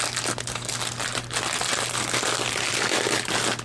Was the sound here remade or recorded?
recorded